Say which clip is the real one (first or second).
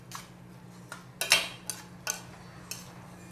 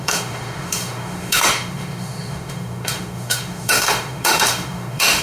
first